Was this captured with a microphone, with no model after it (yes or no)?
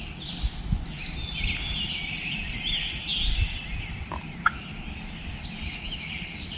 yes